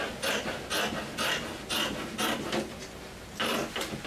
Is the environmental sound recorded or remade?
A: recorded